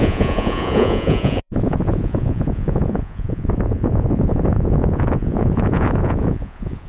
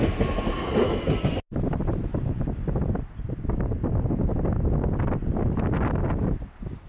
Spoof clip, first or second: first